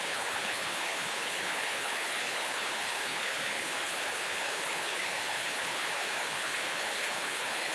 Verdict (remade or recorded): remade